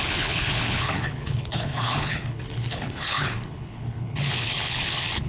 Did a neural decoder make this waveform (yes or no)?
yes